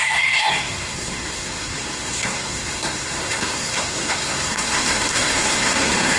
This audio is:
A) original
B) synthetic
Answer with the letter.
B